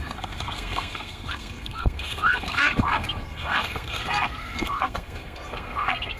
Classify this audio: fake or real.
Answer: fake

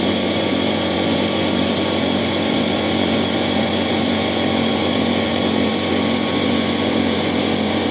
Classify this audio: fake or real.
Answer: fake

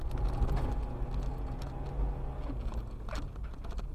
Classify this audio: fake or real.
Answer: real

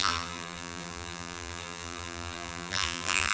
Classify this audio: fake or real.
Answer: fake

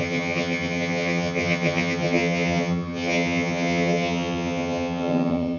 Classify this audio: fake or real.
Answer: fake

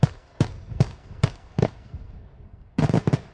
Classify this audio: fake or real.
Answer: fake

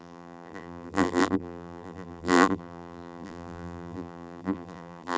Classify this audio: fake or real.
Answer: fake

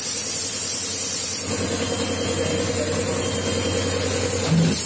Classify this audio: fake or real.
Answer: real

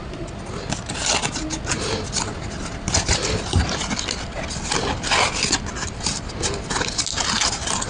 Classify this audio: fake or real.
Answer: real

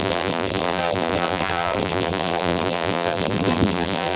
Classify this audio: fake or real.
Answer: fake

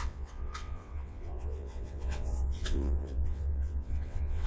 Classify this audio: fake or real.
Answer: fake